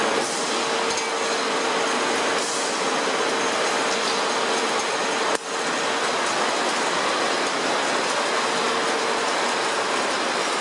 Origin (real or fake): real